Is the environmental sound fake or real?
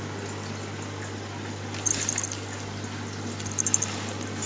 real